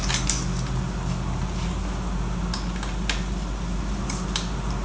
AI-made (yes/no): no